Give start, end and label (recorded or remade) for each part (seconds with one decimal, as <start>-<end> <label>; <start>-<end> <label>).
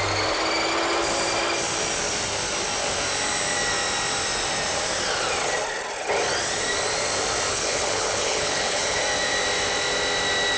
0.0-7.5 recorded; 7.5-9.0 remade; 9.0-10.6 recorded